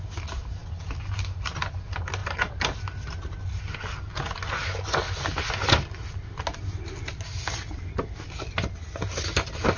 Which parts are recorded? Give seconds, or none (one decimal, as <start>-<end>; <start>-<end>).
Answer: 0.0-0.6; 1.6-2.2; 2.8-9.8